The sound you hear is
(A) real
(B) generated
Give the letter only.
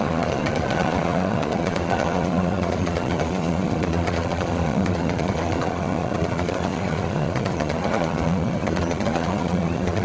B